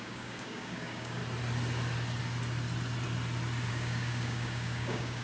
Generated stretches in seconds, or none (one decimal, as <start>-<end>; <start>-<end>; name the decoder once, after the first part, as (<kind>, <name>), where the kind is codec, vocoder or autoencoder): 0.0-1.2 (codec, DAC); 3.7-5.2